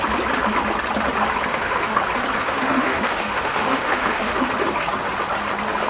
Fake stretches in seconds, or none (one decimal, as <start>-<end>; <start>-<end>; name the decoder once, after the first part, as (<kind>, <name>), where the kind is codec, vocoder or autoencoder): 1.5-2.0 (autoencoder, DAC-VAE); 2.4-4.4